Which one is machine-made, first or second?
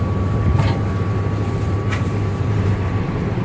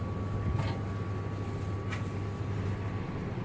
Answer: first